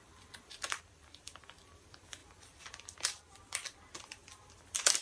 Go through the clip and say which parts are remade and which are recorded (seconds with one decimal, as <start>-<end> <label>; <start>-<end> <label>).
0.0-5.0 remade